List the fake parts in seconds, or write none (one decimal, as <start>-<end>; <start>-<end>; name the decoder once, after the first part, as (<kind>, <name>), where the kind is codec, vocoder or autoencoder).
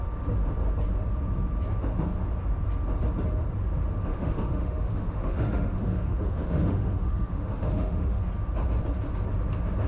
4.1-8.2 (autoencoder, DAC-VAE)